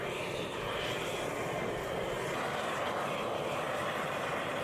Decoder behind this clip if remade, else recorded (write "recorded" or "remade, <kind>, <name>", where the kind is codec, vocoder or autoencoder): recorded